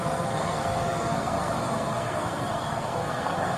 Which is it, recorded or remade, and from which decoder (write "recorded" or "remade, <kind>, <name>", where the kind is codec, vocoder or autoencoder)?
remade, codec, SNAC